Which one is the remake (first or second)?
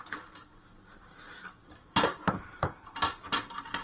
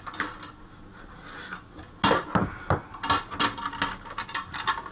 first